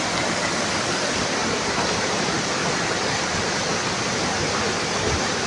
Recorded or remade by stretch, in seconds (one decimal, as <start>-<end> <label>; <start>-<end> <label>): 0.0-1.4 recorded; 1.4-2.5 remade; 2.5-5.5 recorded